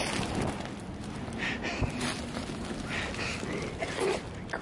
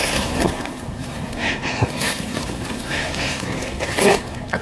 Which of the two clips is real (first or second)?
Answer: first